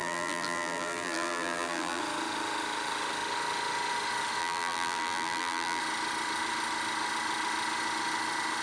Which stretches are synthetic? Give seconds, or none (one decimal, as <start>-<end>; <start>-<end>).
0.0-2.0; 4.4-5.8